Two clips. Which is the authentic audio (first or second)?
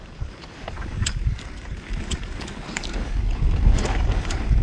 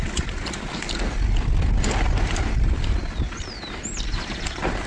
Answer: second